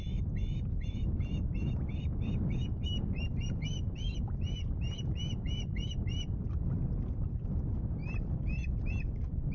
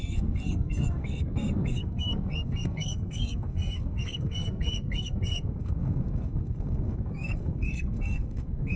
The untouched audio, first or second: first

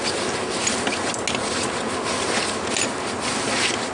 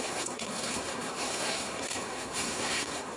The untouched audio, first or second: first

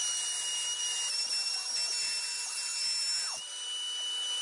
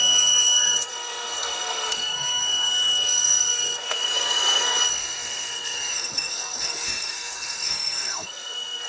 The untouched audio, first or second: first